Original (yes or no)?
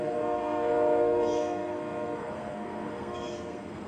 no